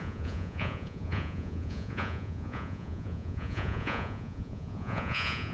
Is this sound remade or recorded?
remade